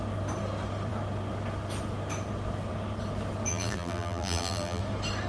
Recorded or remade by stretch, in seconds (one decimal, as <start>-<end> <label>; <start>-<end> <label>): 0.0-3.5 recorded; 3.5-4.8 remade; 4.8-5.3 recorded